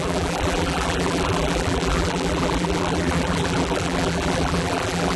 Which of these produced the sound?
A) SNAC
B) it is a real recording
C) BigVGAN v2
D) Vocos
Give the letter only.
C